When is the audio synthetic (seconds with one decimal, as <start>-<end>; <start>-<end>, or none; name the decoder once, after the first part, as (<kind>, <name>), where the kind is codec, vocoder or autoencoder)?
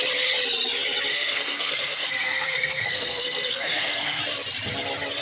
1.1-4.2 (codec, SNAC)